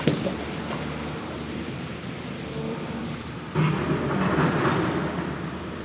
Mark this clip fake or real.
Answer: fake